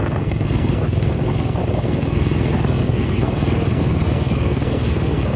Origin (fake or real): fake